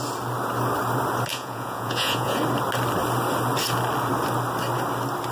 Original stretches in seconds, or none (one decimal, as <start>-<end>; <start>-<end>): 0.0-1.3; 2.4-5.3